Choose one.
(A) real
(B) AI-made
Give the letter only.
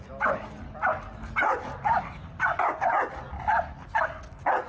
A